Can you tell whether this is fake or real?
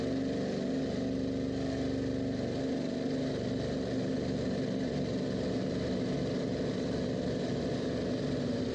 real